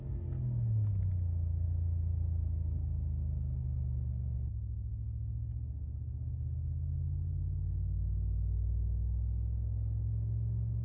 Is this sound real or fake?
real